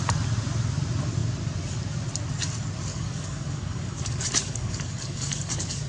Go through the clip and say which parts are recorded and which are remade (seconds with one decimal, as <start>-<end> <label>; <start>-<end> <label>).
0.0-2.9 recorded; 2.9-5.9 remade